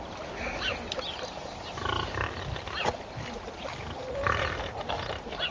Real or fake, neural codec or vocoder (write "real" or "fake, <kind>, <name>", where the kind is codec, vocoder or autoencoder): real